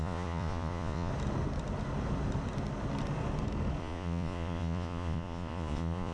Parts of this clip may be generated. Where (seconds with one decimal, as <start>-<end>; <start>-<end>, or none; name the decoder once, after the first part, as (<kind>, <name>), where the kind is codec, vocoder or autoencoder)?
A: 0.0-1.1 (vocoder, Vocos); 3.8-6.1